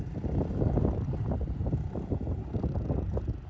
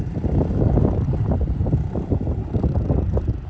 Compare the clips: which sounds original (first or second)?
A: first